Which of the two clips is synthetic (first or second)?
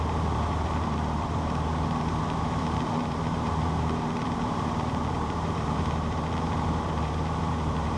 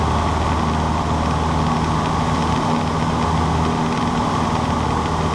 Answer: first